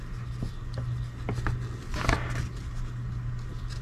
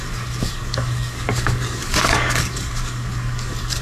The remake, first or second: second